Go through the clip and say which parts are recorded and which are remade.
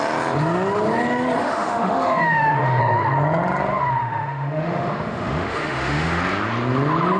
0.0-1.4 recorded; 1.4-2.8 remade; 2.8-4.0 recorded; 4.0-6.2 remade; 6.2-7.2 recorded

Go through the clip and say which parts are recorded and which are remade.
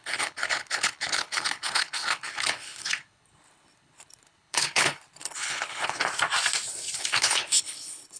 0.0-6.0 remade; 6.0-7.0 recorded; 7.0-8.2 remade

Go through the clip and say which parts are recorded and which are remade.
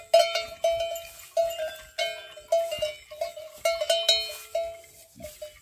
0.0-5.6 recorded